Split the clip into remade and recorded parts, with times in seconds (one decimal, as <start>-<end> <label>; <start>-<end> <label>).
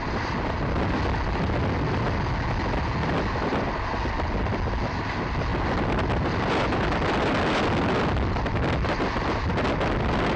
0.0-5.5 recorded; 5.5-6.5 remade; 6.5-10.4 recorded